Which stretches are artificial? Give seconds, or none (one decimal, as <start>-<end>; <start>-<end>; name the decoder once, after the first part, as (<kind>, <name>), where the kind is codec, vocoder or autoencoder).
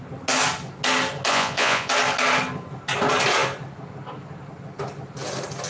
1.3-1.9 (vocoder, Vocos)